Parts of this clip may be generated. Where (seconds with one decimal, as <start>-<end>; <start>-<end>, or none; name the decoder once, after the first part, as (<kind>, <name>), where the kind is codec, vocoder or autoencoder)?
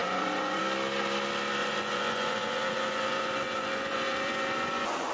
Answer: 0.0-0.6 (vocoder, Vocos); 1.6-5.1